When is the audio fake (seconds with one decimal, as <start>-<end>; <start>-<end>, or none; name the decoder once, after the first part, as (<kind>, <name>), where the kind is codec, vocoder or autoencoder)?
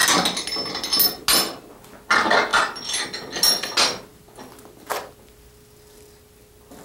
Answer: none